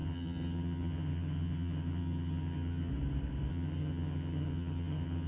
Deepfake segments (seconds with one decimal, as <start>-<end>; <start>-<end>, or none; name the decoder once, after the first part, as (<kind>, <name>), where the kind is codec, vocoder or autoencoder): 0.0-2.9 (vocoder, HiFi-GAN); 3.5-5.3